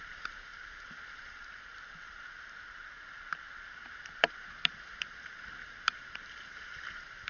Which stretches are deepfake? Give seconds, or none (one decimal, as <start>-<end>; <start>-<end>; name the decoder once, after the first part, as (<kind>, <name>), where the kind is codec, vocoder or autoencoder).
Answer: 0.0-7.3 (vocoder, BigVGAN v2)